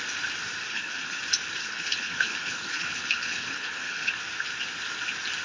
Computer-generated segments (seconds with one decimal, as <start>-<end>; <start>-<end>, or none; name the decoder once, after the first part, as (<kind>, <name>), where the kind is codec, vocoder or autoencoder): 0.7-1.2 (codec, HILCodec); 1.6-4.2